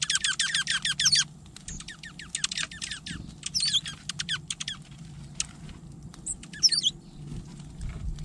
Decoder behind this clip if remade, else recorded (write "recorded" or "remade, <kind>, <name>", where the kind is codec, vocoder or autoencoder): recorded